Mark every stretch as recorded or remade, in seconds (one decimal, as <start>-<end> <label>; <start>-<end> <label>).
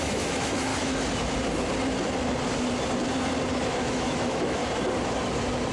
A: 0.0-0.7 remade; 0.7-3.7 recorded; 3.7-4.6 remade; 4.6-5.7 recorded